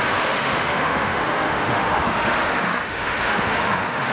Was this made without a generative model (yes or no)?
no